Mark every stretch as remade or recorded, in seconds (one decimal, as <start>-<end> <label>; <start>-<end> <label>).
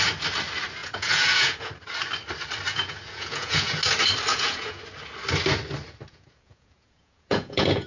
0.0-0.8 recorded; 0.8-1.7 remade; 1.7-2.7 recorded; 2.7-3.8 remade; 3.8-4.3 recorded; 4.3-4.8 remade; 4.8-6.1 recorded; 6.1-7.9 remade